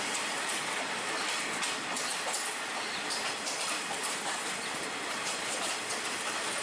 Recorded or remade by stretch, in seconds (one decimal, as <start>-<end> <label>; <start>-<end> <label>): 0.0-6.6 recorded